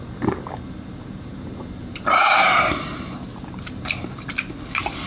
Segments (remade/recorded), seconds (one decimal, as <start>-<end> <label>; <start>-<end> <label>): 0.0-1.8 recorded; 1.8-4.2 remade; 4.2-5.1 recorded